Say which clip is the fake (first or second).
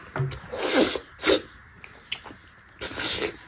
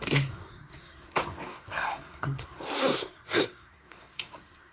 second